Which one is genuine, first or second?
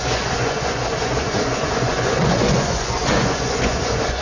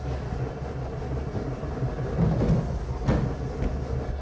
second